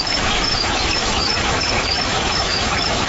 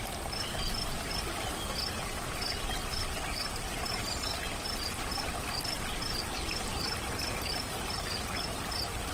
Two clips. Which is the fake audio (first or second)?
first